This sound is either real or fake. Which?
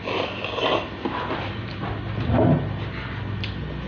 real